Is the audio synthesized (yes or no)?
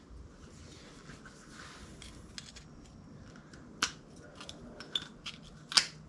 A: no